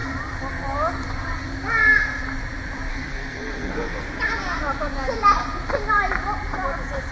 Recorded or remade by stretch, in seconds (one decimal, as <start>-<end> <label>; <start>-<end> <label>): 0.0-2.9 recorded; 2.9-4.1 remade; 4.1-7.1 recorded